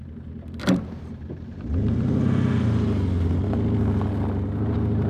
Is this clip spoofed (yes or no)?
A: no